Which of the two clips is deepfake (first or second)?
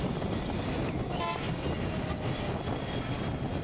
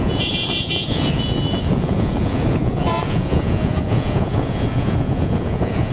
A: second